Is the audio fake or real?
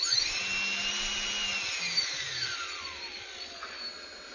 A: real